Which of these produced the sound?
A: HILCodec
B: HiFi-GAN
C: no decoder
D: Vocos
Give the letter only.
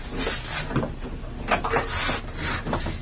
C